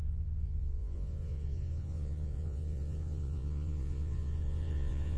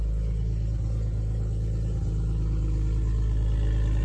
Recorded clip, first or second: second